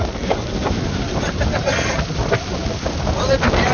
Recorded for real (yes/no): yes